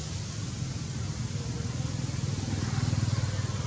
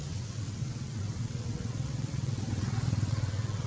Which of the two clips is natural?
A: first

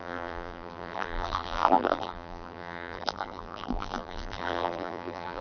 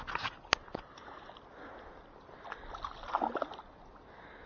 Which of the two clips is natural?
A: second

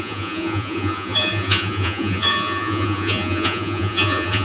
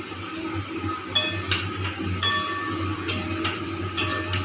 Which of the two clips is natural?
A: second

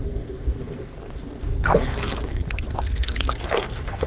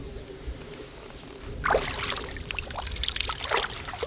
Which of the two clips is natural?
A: second